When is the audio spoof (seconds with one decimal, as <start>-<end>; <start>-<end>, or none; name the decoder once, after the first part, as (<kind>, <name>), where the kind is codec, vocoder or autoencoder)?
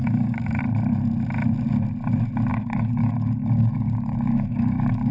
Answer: 0.0-0.6 (codec, DAC); 2.5-5.1